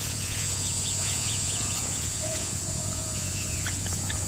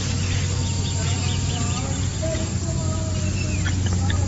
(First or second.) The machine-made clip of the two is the first